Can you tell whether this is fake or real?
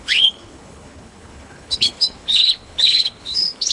fake